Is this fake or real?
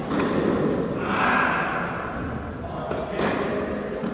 real